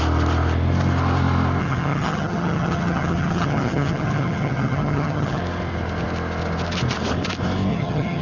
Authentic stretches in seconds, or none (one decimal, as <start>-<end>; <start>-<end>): 0.0-1.6; 5.4-7.7